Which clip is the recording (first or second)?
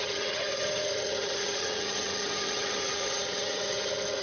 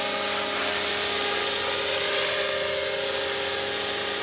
second